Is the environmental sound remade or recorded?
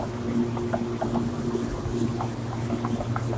recorded